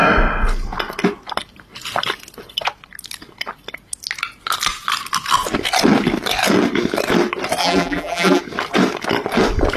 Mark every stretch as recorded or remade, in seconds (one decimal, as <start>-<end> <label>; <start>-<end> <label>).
0.0-7.6 recorded; 7.6-8.4 remade; 8.4-9.8 recorded